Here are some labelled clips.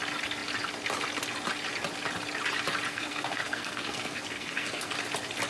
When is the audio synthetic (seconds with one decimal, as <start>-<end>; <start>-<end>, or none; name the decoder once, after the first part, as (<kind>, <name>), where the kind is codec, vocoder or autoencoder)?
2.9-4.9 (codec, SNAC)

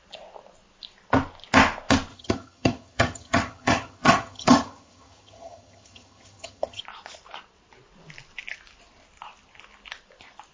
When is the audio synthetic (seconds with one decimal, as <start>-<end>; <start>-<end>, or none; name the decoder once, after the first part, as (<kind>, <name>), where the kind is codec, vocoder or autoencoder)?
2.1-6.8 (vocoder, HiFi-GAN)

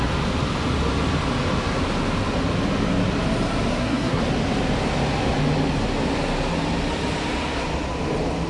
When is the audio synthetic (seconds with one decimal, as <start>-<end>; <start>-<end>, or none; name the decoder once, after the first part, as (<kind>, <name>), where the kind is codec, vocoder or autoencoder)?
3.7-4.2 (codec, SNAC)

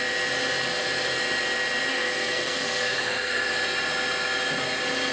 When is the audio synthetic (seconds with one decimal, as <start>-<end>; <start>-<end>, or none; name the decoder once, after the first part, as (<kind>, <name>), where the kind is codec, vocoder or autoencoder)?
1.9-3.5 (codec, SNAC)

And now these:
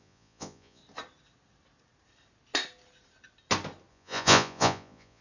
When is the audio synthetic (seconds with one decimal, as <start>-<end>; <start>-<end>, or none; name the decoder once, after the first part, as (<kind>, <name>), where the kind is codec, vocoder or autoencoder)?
0.0-0.8 (vocoder, Vocos); 3.9-5.2